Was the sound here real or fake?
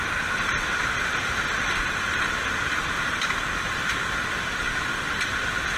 real